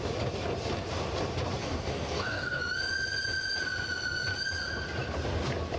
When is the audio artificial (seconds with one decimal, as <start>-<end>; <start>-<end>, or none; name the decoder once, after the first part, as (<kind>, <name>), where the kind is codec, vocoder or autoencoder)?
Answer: 1.6-2.6 (codec, DAC)